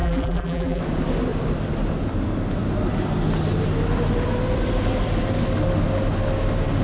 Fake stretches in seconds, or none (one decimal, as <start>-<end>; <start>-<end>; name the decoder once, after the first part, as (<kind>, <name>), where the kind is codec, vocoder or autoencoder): 0.0-0.8 (vocoder, BigVGAN v2)